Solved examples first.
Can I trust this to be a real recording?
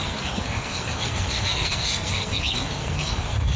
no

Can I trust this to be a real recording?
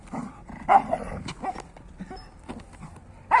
yes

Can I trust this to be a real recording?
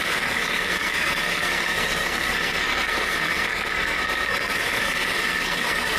no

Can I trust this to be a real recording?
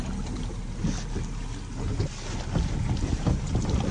yes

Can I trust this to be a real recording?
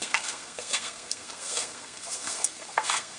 no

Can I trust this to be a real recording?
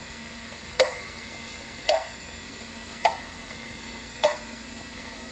no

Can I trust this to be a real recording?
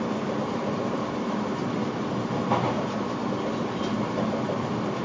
yes